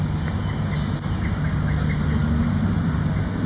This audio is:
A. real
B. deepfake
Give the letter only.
A